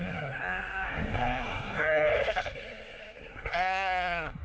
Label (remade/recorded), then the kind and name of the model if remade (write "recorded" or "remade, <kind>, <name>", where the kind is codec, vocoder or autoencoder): remade, codec, SNAC